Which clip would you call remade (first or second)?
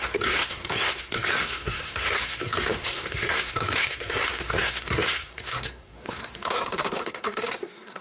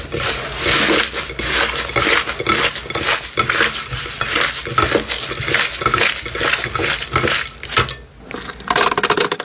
first